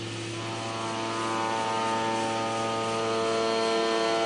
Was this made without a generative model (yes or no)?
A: yes